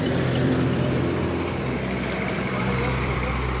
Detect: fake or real fake